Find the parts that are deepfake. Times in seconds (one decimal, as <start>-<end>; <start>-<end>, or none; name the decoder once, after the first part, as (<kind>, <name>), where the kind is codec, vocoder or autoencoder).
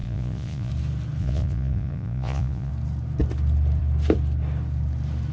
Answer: 0.0-0.7 (vocoder, Vocos); 1.2-2.7